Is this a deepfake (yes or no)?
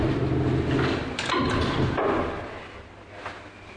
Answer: no